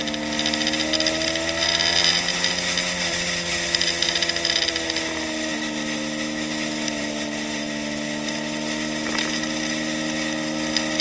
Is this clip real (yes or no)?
yes